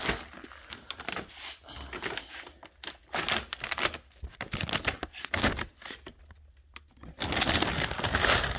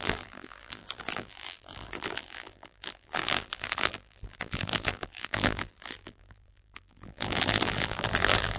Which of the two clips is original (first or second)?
first